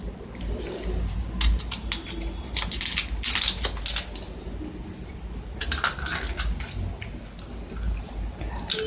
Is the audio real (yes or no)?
yes